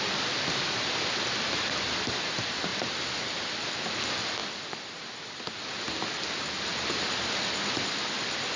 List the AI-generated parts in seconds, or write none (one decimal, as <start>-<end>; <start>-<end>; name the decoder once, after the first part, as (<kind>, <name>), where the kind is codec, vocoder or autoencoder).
2.7-3.4 (vocoder, BigVGAN v2)